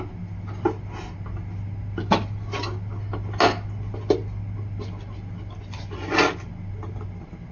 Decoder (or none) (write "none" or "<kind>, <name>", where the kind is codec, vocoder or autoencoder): none